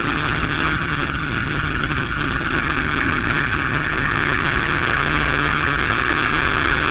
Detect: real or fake fake